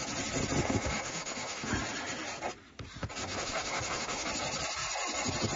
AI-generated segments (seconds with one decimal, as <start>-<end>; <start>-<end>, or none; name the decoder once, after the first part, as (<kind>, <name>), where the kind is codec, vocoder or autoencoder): 0.6-1.7 (autoencoder, DAC-VAE); 3.2-4.3